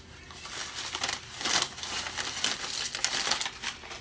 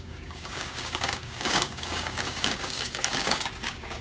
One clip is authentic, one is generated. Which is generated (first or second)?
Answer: second